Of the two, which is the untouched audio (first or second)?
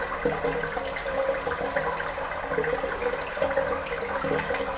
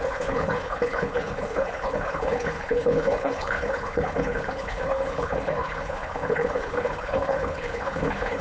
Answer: first